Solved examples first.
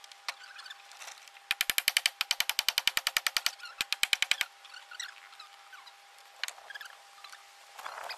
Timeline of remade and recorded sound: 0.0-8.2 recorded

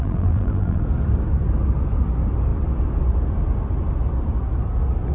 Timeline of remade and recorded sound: 0.0-0.8 remade; 0.8-5.1 recorded

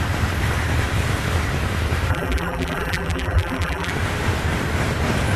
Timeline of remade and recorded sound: 0.0-2.1 recorded; 2.1-3.9 remade; 3.9-5.4 recorded